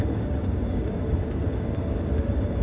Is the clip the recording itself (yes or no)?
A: no